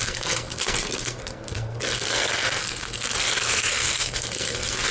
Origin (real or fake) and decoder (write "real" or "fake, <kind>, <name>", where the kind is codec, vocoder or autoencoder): fake, codec, SNAC